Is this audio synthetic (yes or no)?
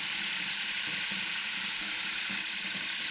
no